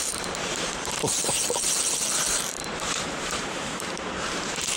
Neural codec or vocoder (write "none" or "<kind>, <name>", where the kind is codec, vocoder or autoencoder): vocoder, BigVGAN v2